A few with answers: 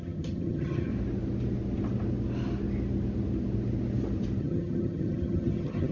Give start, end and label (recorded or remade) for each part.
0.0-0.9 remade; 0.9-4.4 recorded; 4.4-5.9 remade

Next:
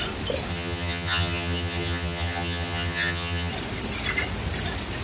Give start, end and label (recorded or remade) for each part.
0.0-0.5 recorded; 0.5-3.5 remade; 3.5-5.0 recorded

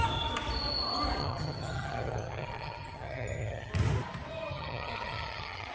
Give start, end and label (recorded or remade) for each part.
0.0-1.2 recorded; 1.2-3.7 remade; 3.7-4.5 recorded; 4.5-5.7 remade

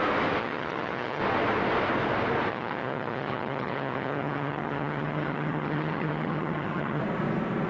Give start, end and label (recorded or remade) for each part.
0.0-0.4 recorded; 0.4-1.2 remade; 1.2-2.5 recorded; 2.5-7.0 remade; 7.0-7.7 recorded

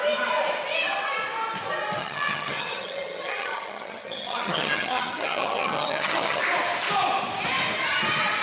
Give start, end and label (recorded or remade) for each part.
0.0-2.0 recorded; 2.0-6.4 remade; 6.4-8.4 recorded

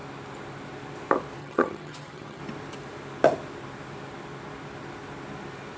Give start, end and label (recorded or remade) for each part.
0.0-1.4 recorded; 1.4-2.4 remade; 2.4-5.8 recorded

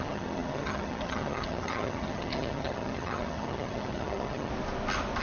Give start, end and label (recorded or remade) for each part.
0.0-4.5 remade; 4.5-5.2 recorded